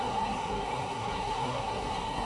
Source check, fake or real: fake